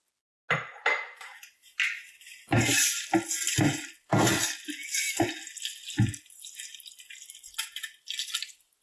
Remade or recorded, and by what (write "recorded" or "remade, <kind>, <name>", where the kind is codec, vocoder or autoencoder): recorded